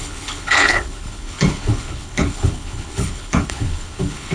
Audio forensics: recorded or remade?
remade